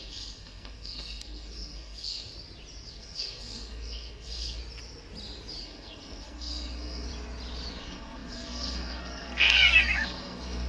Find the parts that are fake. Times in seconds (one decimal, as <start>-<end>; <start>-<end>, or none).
0.0-2.3; 2.9-4.6; 5.6-7.1; 7.7-10.7